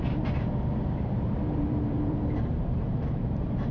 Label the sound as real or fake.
fake